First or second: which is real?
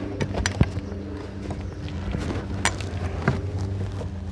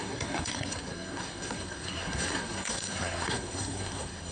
first